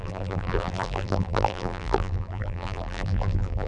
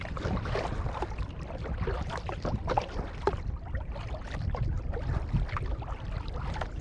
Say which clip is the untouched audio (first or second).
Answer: second